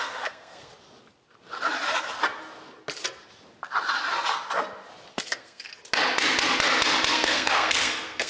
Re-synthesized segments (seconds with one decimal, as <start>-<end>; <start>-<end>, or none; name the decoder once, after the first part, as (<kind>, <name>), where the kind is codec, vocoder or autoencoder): 0.0-0.7 (codec, SNAC); 5.1-5.7; 7.1-8.3